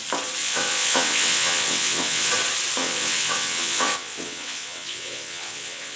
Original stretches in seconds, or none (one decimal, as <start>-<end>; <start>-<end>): 0.0-0.4; 2.3-2.8